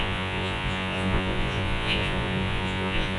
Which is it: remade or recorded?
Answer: remade